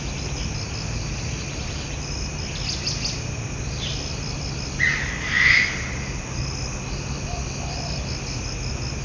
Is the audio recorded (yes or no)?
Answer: yes